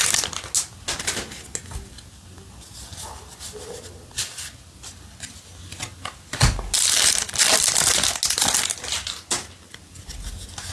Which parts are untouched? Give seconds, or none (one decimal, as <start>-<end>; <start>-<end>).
0.0-10.7